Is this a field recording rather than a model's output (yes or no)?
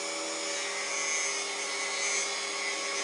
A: yes